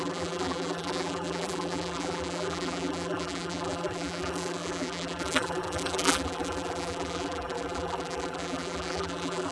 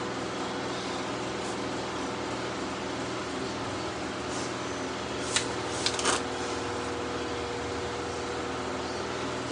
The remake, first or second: first